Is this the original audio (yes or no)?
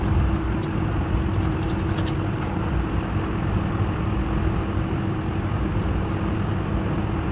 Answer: yes